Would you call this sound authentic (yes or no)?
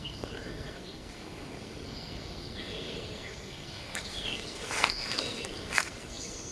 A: no